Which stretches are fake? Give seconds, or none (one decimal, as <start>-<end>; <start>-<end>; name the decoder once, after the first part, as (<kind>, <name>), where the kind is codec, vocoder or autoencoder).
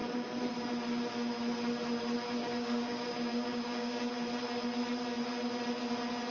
2.4-4.1 (codec, DAC)